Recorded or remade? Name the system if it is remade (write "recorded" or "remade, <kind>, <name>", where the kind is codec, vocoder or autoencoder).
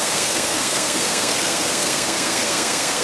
remade, codec, SNAC